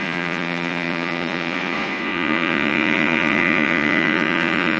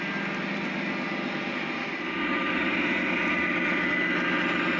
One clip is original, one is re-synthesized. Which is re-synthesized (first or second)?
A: first